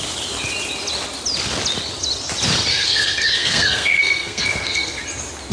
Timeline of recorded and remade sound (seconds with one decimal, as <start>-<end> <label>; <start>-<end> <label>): 0.0-2.7 recorded; 2.7-5.0 remade; 5.0-5.5 recorded